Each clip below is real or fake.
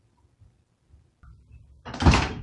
real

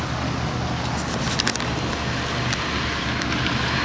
real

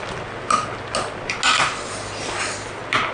real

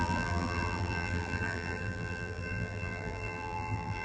fake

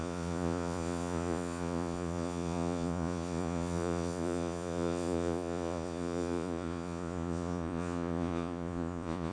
fake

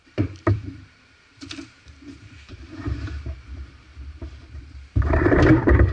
fake